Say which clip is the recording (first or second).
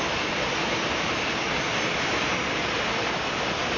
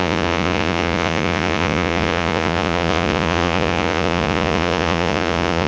first